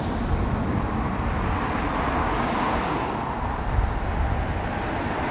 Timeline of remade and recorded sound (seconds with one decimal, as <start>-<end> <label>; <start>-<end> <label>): 0.0-2.2 recorded; 2.2-2.9 remade; 2.9-5.3 recorded